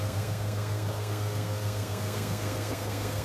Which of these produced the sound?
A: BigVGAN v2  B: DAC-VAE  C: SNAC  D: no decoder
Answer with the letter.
C